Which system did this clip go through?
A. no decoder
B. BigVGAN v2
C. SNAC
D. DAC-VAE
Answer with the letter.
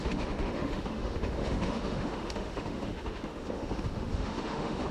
D